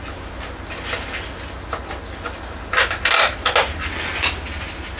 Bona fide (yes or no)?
yes